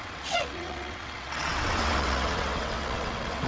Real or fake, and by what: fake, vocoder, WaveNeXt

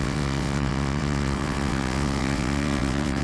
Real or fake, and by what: fake, vocoder, WaveNeXt